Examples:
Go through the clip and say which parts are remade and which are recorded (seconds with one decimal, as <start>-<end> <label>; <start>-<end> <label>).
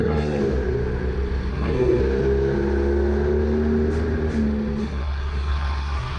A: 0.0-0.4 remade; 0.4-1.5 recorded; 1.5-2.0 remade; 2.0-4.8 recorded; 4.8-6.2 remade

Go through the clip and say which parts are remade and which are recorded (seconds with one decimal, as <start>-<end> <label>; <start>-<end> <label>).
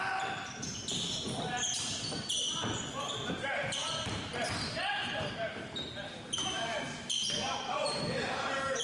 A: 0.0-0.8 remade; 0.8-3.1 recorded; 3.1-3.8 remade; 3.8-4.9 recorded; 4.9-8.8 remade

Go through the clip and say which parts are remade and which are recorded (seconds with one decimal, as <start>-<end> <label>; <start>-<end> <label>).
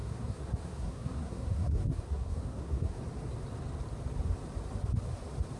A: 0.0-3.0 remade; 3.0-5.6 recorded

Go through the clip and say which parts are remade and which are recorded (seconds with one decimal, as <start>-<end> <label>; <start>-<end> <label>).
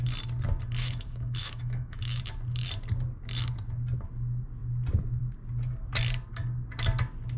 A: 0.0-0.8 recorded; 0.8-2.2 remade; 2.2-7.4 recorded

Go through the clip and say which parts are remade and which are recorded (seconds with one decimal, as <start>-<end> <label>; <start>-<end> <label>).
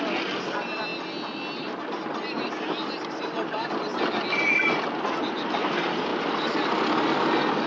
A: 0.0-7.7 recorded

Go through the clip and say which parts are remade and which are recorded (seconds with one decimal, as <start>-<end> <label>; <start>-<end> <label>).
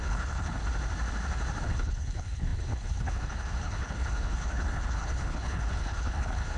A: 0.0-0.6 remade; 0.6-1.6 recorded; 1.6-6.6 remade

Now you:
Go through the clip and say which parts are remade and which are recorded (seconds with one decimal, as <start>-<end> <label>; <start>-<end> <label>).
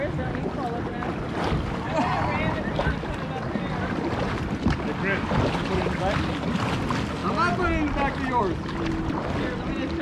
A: 0.0-10.0 recorded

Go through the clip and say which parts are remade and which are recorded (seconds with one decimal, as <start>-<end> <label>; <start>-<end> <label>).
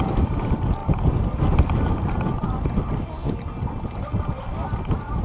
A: 0.0-5.2 recorded